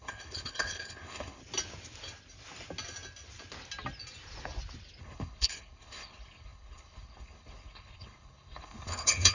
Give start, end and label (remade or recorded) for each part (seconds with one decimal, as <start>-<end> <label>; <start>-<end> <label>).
0.0-1.4 remade; 1.4-5.0 recorded; 5.0-9.3 remade